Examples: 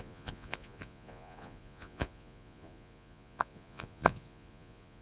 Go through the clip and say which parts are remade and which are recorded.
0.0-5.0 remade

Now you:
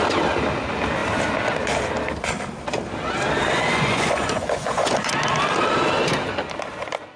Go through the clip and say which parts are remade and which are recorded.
0.0-3.5 recorded; 3.5-5.1 remade; 5.1-7.2 recorded

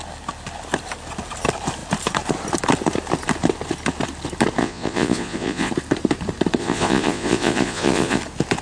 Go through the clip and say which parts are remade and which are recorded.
0.0-4.6 recorded; 4.6-5.7 remade; 5.7-6.6 recorded; 6.6-8.2 remade; 8.2-8.6 recorded

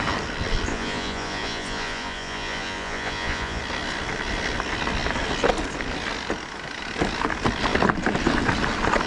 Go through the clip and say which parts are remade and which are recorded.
0.0-0.7 recorded; 0.7-3.6 remade; 3.6-9.1 recorded

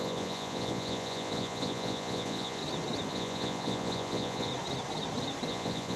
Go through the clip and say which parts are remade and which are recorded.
0.0-2.6 remade; 2.6-3.1 recorded; 3.1-4.5 remade; 4.5-5.5 recorded; 5.5-6.0 remade